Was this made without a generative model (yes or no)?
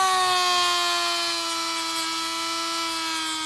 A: yes